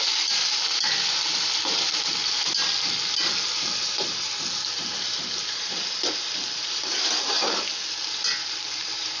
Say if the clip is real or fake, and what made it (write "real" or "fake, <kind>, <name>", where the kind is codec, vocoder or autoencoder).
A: real